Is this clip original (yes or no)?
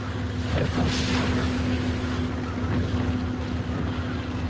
yes